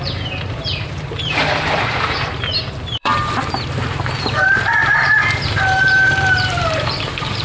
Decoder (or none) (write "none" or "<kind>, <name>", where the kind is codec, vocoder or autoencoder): vocoder, BigVGAN v2